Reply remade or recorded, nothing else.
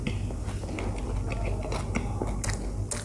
recorded